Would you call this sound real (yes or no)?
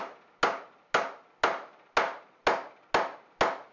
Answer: yes